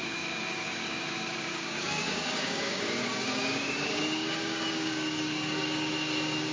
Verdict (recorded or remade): remade